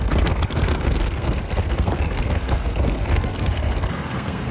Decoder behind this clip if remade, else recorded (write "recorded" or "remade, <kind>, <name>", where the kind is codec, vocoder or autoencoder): remade, codec, SNAC